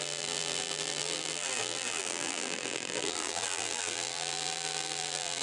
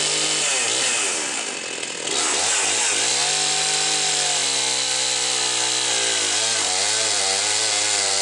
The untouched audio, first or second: second